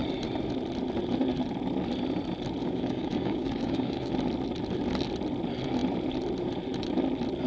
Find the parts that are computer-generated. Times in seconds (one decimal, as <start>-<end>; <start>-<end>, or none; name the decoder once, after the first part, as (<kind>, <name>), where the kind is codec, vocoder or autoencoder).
2.6-4.1 (codec, DAC)